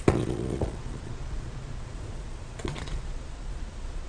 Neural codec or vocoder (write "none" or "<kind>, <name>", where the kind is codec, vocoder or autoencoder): vocoder, Vocos